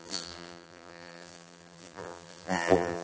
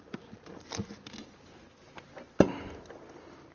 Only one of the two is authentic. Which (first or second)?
second